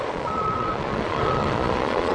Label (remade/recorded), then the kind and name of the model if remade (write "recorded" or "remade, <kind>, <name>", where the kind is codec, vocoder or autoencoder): remade, vocoder, Vocos